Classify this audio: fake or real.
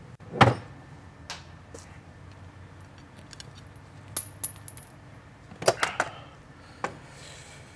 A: real